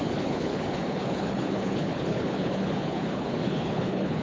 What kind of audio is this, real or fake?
fake